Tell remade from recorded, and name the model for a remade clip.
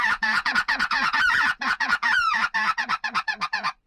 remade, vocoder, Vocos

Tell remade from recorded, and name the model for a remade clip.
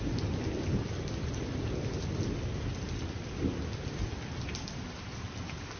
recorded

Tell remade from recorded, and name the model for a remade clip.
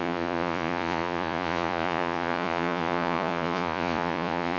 remade, vocoder, Vocos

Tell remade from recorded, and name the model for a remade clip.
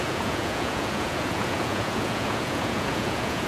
remade, vocoder, Vocos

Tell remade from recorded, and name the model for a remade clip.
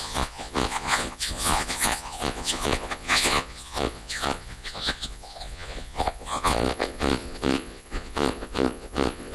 remade, vocoder, Vocos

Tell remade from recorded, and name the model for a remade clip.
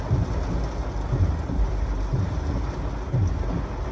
recorded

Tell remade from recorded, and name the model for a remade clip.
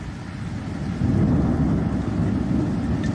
recorded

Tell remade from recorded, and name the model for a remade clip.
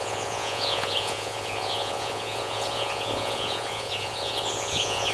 remade, vocoder, Vocos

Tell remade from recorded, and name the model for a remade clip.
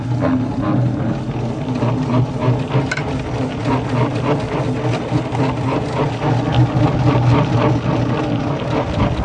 recorded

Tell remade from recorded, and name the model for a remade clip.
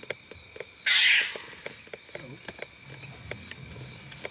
recorded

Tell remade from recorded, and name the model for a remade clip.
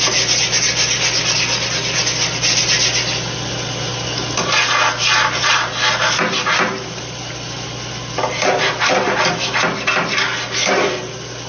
recorded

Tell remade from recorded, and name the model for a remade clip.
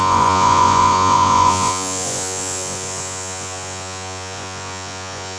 remade, vocoder, Vocos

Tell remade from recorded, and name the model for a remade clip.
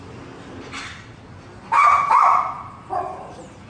recorded